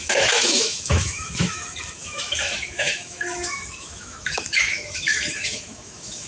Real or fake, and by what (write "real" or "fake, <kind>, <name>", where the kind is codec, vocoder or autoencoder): fake, autoencoder, DAC-VAE